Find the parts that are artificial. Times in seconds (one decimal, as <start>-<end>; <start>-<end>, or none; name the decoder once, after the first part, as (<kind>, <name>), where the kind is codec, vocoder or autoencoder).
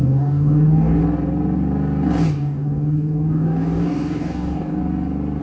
0.0-1.0 (codec, DAC); 2.3-4.8